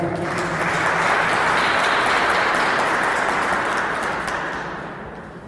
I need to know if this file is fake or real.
real